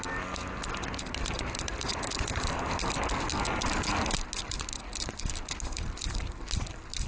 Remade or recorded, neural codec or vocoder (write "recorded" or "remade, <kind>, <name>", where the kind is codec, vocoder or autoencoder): recorded